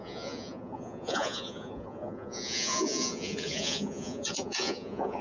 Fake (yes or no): yes